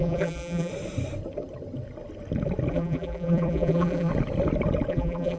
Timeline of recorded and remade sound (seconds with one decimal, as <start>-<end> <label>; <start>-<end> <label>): 0.0-0.7 remade; 0.7-2.7 recorded; 2.7-4.1 remade; 4.1-4.9 recorded; 4.9-5.4 remade

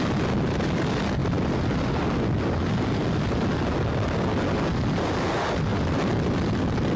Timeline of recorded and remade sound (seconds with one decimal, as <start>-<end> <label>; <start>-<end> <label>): 0.0-1.2 recorded; 1.2-2.8 remade; 2.8-5.7 recorded; 5.7-6.3 remade; 6.3-7.0 recorded

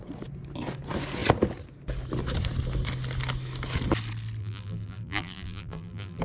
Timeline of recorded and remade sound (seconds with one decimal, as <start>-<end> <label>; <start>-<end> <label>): 0.0-4.4 recorded; 4.4-6.2 remade

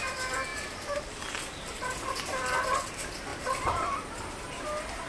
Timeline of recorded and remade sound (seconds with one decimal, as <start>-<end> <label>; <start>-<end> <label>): 0.0-0.5 recorded; 0.5-1.0 remade; 1.0-3.3 recorded; 3.3-3.8 remade; 3.8-5.1 recorded

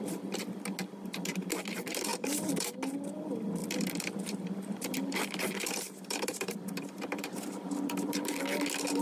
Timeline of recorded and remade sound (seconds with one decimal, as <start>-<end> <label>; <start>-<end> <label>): 0.0-2.1 recorded; 2.1-2.7 remade; 2.7-3.6 recorded; 3.6-8.4 remade; 8.4-9.0 recorded

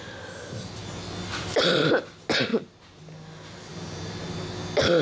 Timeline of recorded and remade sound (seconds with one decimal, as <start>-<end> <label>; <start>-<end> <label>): 0.0-2.5 recorded; 2.5-3.0 remade; 3.0-3.7 recorded; 3.7-4.4 remade; 4.4-5.0 recorded

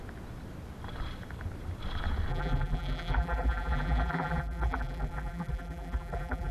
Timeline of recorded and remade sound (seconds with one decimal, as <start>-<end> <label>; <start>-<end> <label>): 0.0-2.3 recorded; 2.3-6.5 remade